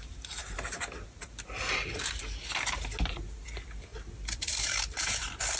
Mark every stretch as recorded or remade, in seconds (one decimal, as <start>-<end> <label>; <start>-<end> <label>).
0.0-5.6 recorded